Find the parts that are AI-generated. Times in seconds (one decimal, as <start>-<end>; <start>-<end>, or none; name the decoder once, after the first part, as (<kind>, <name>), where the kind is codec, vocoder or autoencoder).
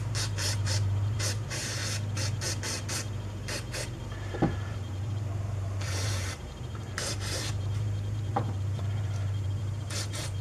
0.0-1.8 (vocoder, BigVGAN v2); 2.9-10.4